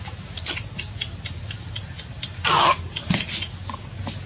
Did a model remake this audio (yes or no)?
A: no